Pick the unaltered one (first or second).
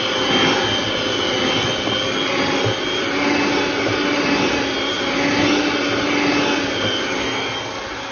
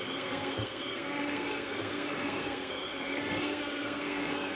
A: first